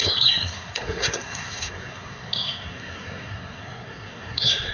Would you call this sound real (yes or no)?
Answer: no